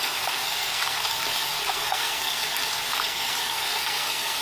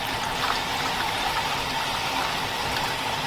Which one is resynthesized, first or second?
first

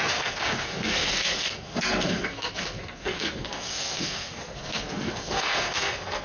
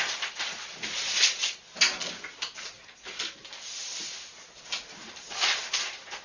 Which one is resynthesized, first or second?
first